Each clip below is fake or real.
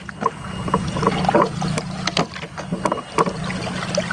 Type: real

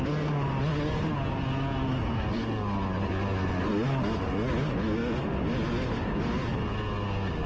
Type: real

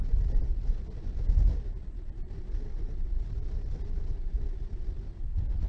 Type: real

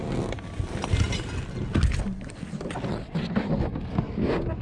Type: real